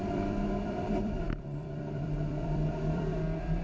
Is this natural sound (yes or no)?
no